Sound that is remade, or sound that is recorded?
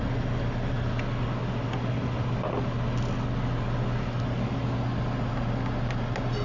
recorded